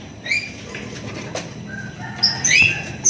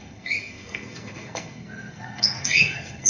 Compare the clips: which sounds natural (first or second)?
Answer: first